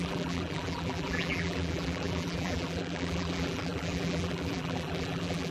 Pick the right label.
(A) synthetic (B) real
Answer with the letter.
A